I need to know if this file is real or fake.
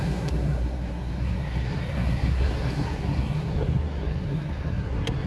fake